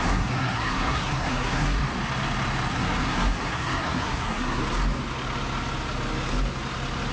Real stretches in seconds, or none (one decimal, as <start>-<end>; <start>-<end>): 1.8-2.7; 4.6-7.1